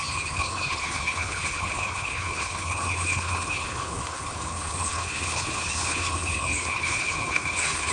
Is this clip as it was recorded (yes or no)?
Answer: no